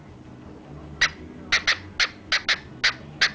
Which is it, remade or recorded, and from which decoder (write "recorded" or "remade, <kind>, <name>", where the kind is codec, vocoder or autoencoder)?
recorded